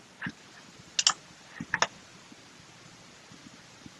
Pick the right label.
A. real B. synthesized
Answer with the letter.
A